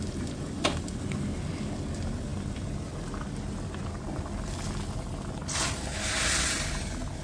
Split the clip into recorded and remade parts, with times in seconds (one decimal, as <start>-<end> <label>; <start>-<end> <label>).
0.0-7.2 recorded